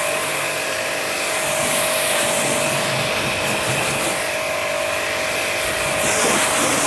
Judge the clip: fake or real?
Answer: real